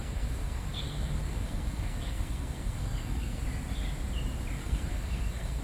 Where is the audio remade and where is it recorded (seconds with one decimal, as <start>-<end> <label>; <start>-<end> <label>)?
0.0-3.4 remade; 3.4-4.6 recorded; 4.6-5.6 remade